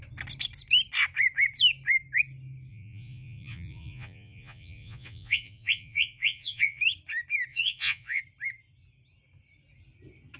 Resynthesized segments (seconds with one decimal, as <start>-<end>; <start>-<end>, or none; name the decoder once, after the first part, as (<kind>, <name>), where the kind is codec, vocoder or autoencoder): 2.7-6.8 (vocoder, Vocos); 7.5-8.2